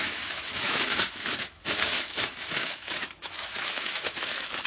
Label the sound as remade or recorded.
remade